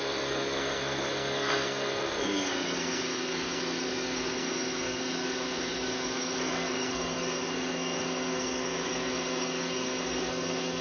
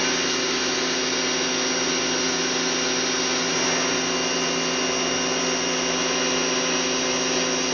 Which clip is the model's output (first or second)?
first